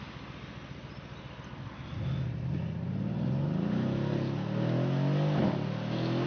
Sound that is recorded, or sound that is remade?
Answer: recorded